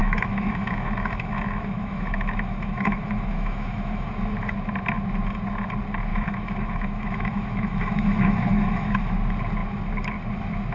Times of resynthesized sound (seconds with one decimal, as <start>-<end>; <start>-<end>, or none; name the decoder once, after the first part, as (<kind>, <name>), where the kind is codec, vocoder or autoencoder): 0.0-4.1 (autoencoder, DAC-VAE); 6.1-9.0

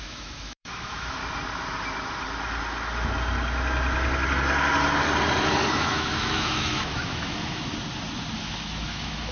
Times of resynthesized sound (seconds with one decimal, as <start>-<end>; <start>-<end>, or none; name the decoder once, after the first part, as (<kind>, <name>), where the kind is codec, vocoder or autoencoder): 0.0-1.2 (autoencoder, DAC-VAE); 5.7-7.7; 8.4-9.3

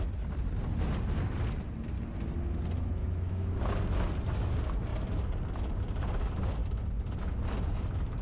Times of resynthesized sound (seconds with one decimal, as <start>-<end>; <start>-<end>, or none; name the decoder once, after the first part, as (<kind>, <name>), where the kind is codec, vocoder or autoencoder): 3.0-3.6 (autoencoder, DAC-VAE)

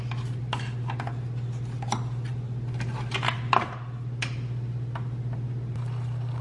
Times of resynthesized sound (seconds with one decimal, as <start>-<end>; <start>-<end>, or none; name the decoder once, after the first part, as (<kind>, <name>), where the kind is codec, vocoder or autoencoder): none

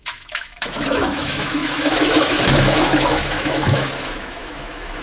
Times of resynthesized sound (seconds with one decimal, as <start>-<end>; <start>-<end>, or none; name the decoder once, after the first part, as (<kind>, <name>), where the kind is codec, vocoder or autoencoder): 0.0-5.0 (autoencoder, DAC-VAE)

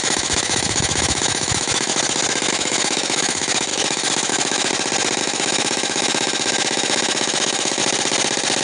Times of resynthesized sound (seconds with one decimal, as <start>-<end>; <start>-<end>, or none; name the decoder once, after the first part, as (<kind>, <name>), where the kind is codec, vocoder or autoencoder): 0.0-1.9 (autoencoder, DAC-VAE); 2.5-4.7; 5.2-7.8

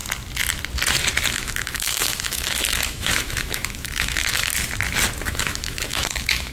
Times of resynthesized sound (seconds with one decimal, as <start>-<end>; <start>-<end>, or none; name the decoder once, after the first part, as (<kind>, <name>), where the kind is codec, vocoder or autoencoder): 1.3-4.5 (autoencoder, DAC-VAE); 5.2-6.5

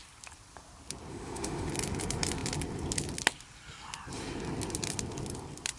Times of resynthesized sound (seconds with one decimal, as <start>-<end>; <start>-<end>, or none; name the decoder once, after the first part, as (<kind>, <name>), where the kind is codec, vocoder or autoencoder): 1.1-1.7 (autoencoder, DAC-VAE)